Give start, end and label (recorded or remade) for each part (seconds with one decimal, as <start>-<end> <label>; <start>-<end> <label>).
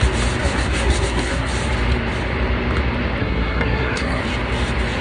0.0-0.4 recorded; 0.4-1.5 remade; 1.5-3.2 recorded; 3.2-4.2 remade; 4.2-5.0 recorded